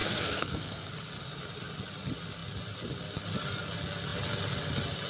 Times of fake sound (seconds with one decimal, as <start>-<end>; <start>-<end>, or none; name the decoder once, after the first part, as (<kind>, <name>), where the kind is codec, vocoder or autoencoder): 0.0-0.9 (codec, SNAC)